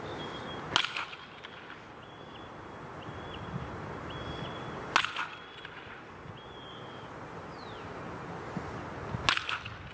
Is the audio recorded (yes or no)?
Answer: yes